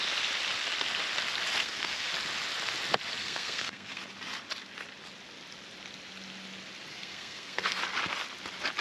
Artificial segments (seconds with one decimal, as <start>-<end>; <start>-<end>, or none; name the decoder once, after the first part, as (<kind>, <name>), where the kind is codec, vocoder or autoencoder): 1.6-2.1 (codec, SNAC); 3.2-4.0; 6.9-7.8